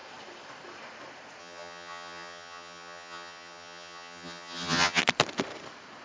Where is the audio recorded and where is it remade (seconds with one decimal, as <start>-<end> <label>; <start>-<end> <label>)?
0.0-1.4 recorded; 1.4-5.0 remade; 5.0-6.0 recorded